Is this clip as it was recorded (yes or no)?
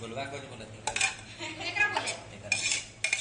yes